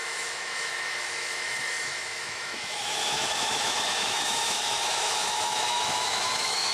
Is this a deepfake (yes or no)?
yes